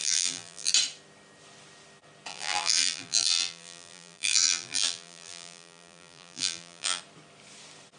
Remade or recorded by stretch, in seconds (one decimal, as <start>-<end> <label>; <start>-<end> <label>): 0.0-0.7 remade; 0.7-2.3 recorded; 2.3-7.0 remade; 7.0-8.0 recorded